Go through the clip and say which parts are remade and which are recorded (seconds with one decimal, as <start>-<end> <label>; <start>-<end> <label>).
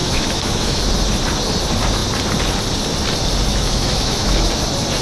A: 0.0-0.8 remade; 0.8-3.5 recorded; 3.5-4.5 remade; 4.5-5.0 recorded